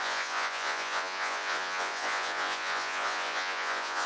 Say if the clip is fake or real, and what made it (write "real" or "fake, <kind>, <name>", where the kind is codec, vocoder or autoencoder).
fake, vocoder, Vocos